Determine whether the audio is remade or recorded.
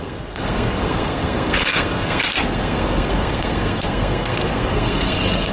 remade